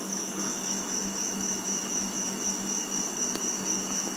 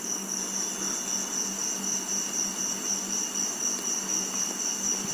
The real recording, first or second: second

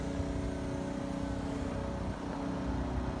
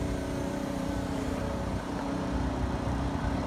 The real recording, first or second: first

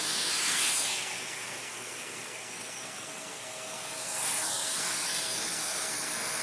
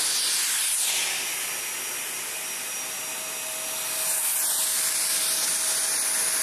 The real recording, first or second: second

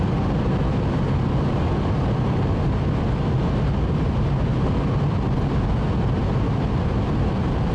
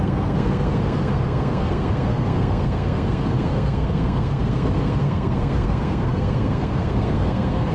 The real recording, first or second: first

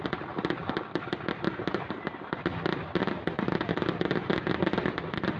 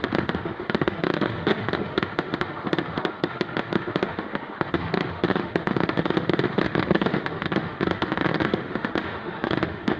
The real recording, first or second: first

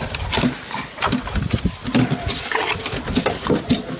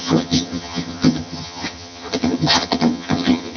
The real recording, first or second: first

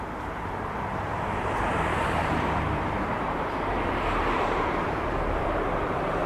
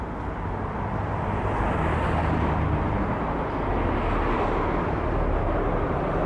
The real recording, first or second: second